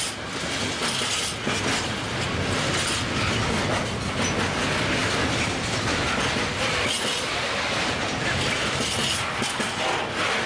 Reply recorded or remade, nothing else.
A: recorded